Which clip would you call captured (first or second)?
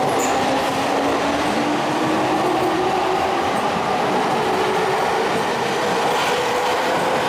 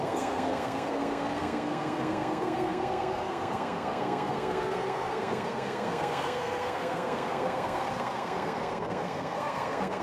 first